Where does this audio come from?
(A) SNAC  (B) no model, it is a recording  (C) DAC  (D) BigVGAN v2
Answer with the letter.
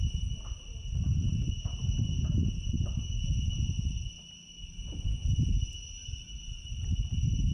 B